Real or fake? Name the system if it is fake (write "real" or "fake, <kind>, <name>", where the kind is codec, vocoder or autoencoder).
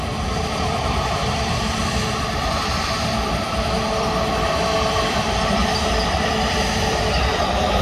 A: fake, vocoder, BigVGAN v2